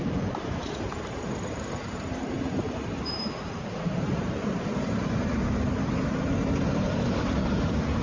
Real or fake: fake